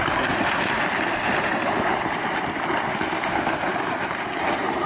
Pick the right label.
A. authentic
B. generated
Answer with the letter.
A